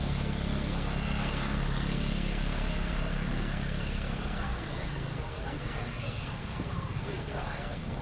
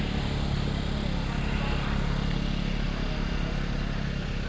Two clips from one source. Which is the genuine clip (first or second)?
second